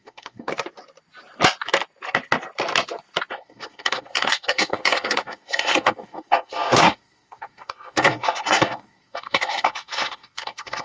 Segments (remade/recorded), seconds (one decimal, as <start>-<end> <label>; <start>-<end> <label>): 0.0-0.5 remade; 0.5-3.3 recorded; 3.3-10.8 remade